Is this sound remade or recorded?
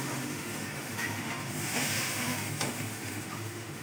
remade